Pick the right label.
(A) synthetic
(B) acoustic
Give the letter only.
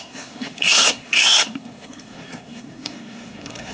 A